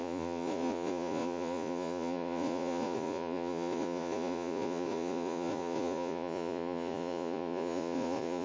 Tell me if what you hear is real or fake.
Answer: fake